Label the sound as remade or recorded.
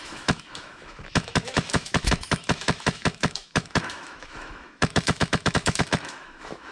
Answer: remade